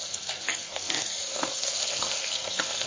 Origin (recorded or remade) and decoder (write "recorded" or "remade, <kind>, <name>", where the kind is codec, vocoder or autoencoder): remade, codec, SNAC